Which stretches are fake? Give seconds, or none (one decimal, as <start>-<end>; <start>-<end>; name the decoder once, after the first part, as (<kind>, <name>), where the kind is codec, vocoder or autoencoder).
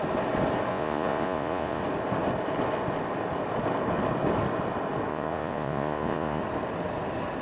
0.7-1.8 (vocoder, Vocos); 5.1-6.4